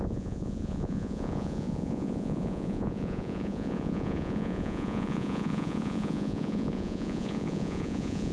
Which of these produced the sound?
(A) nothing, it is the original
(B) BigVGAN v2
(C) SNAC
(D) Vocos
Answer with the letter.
D